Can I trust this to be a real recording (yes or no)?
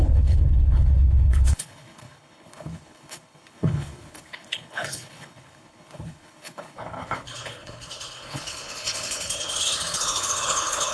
no